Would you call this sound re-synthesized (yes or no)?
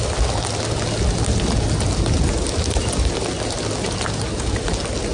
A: no